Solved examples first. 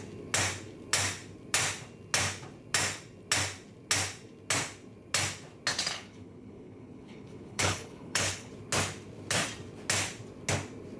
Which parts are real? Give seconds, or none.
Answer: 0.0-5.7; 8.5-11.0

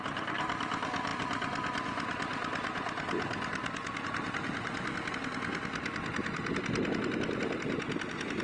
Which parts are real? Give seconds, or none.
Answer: 0.0-8.4

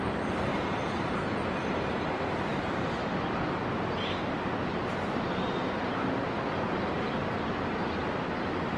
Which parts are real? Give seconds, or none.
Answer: 0.0-0.5; 1.2-2.5; 3.1-5.6; 6.1-8.8

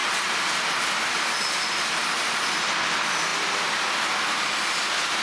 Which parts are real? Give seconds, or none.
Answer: 0.0-5.2

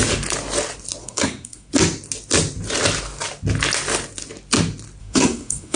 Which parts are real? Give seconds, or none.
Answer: 0.0-1.0; 1.7-5.0

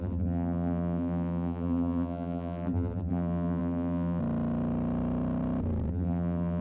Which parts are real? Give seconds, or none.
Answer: 4.2-5.9